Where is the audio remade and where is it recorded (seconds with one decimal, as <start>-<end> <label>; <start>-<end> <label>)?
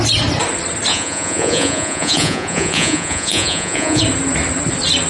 0.0-0.9 recorded; 0.9-4.0 remade; 4.0-5.1 recorded